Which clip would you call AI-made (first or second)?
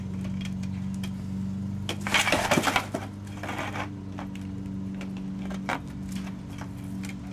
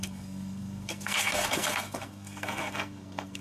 second